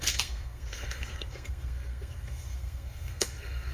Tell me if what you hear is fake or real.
fake